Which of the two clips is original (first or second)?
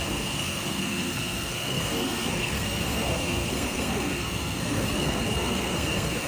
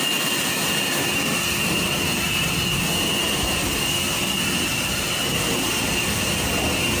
second